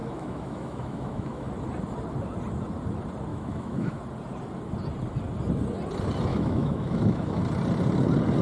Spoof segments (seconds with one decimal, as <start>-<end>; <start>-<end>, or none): 0.0-1.5; 3.3-4.0; 6.3-7.4